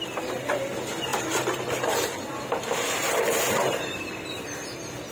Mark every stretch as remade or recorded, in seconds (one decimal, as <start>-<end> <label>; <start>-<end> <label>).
0.0-1.1 recorded; 1.1-4.2 remade; 4.2-5.1 recorded